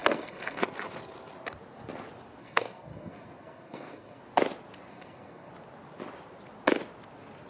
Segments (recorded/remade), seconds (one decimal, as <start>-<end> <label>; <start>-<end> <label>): 0.0-0.6 remade; 0.6-2.4 recorded; 2.4-4.2 remade; 4.2-4.9 recorded; 4.9-5.5 remade; 5.5-7.5 recorded